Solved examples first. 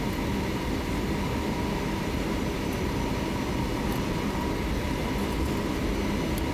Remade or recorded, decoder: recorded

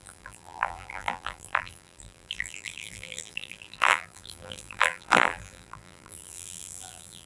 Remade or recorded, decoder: remade, vocoder, BigVGAN v2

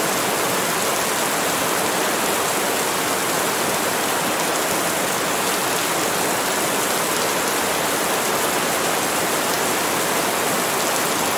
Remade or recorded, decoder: recorded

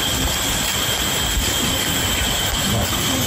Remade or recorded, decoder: recorded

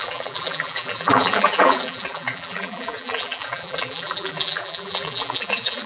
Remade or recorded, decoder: remade, vocoder, BigVGAN v2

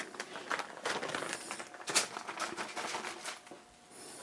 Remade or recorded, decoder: recorded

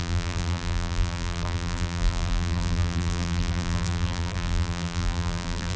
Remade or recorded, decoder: remade, vocoder, BigVGAN v2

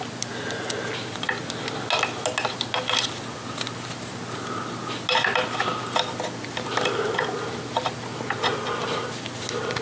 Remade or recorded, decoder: recorded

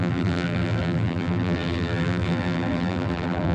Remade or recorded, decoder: remade, vocoder, BigVGAN v2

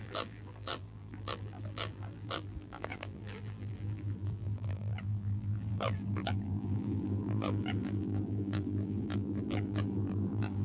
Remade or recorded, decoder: remade, vocoder, BigVGAN v2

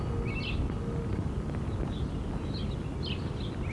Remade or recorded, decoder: recorded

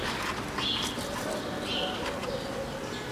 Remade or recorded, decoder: recorded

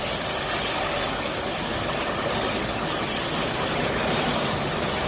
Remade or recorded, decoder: recorded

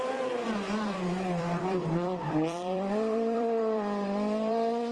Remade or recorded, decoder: remade, vocoder, BigVGAN v2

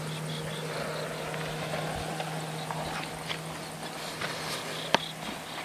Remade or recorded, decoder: recorded